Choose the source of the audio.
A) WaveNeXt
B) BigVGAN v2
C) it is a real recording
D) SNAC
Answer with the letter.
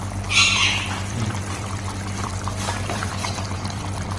B